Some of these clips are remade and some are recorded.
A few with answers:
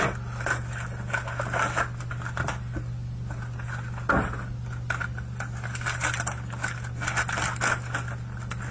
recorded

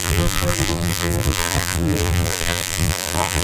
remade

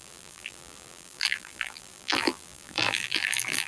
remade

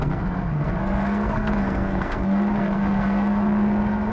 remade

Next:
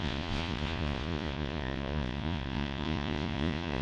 remade